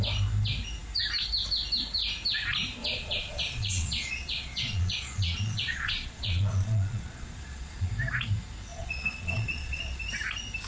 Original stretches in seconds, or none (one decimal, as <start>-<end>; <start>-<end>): 0.0-2.8; 7.9-8.7; 10.0-10.7